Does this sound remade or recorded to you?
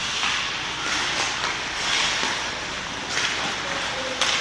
recorded